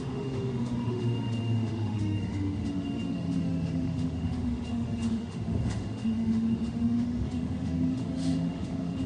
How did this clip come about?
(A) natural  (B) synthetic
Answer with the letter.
B